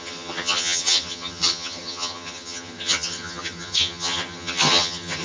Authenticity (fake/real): fake